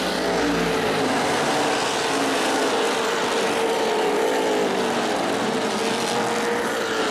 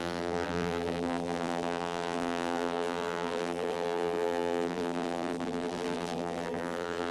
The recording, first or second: first